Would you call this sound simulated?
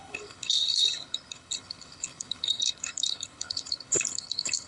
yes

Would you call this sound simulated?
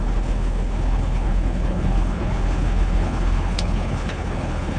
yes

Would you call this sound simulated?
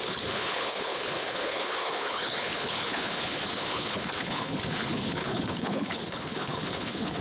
yes